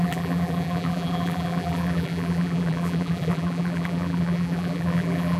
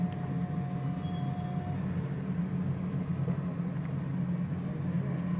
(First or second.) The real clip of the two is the second